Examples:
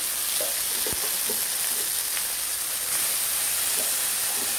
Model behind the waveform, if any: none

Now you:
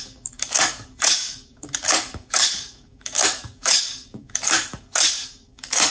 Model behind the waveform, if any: codec, DAC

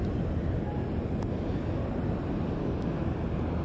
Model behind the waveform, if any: none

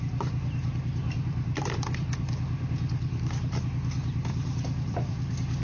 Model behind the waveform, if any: vocoder, BigVGAN v2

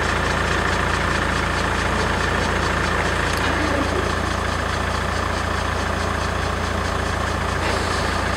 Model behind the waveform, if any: none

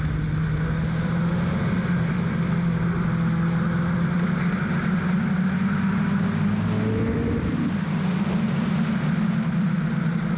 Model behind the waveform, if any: none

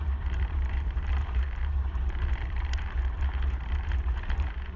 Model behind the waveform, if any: vocoder, BigVGAN v2